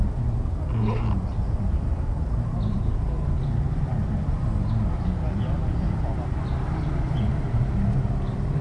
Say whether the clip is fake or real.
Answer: real